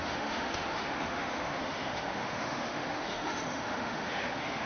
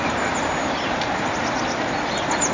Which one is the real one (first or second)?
second